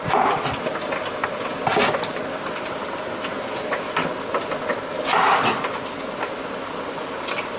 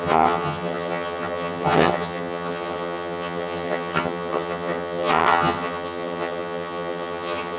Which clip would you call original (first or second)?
first